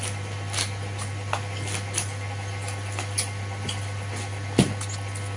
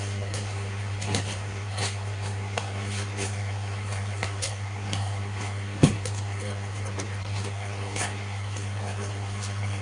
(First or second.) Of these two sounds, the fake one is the second